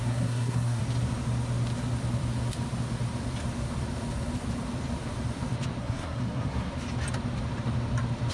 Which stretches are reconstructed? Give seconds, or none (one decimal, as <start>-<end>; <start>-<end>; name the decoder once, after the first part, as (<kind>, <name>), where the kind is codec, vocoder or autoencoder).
0.0-0.8 (codec, SNAC); 5.8-6.7